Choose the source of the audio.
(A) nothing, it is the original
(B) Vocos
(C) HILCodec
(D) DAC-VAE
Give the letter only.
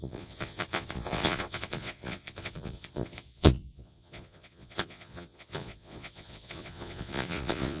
B